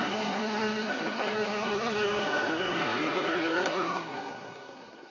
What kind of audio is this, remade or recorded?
remade